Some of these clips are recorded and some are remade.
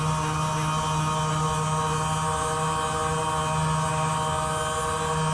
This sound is recorded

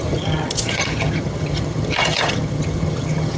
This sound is remade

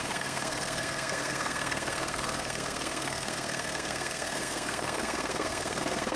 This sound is remade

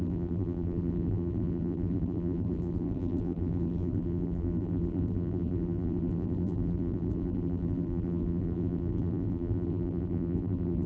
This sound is remade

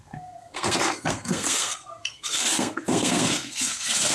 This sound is remade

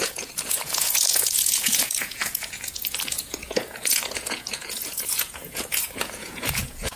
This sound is remade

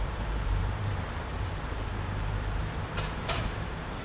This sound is remade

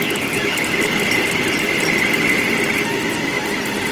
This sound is recorded